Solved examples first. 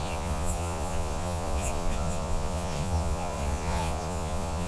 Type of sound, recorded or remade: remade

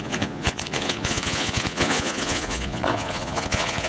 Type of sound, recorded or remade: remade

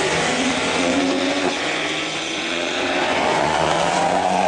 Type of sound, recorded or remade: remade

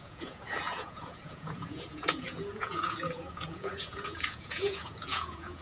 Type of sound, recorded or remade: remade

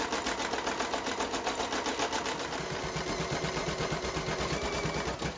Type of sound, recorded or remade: recorded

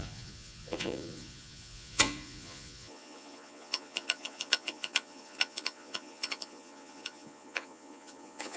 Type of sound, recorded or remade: remade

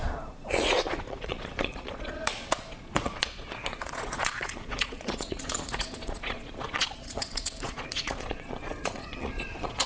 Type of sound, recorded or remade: remade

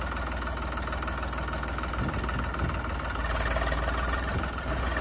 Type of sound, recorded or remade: recorded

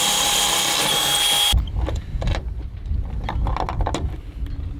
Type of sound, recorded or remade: recorded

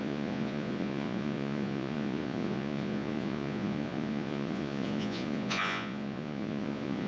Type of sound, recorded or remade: remade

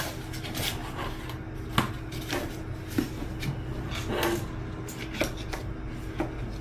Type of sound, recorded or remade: recorded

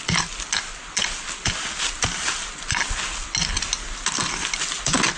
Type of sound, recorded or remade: recorded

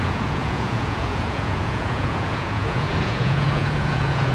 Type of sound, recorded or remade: remade